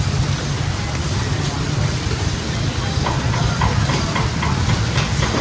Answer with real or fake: real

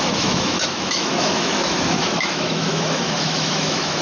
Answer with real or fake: fake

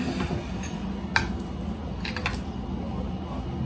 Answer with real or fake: real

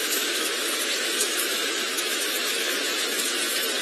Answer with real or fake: fake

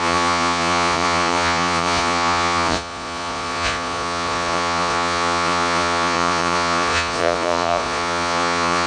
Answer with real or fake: fake